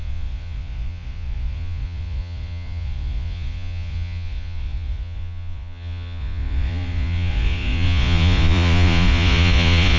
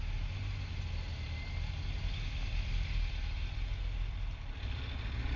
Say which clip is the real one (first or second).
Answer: second